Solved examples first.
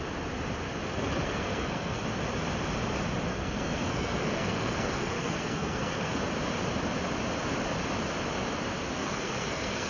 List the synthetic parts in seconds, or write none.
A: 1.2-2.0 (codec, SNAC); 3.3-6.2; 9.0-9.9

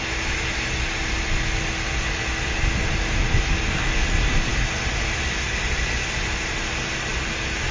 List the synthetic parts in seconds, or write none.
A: none

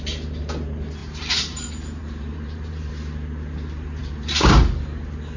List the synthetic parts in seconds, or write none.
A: 1.0-2.9 (vocoder, BigVGAN v2); 4.0-4.6